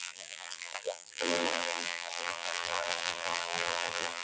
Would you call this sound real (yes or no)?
no